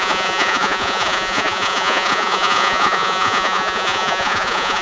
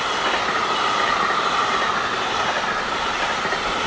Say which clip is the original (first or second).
second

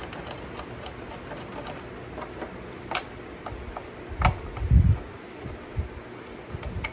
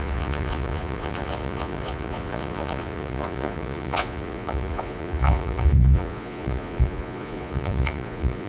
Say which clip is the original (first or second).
first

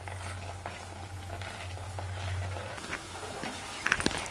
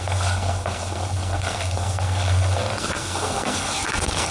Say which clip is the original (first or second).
first